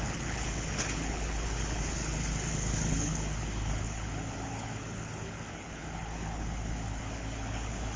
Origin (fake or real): fake